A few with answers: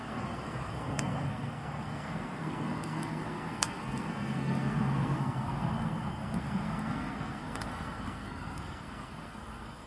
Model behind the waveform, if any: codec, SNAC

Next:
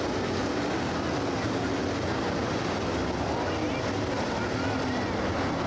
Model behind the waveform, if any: none